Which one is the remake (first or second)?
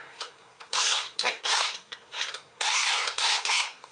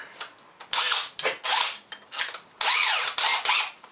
first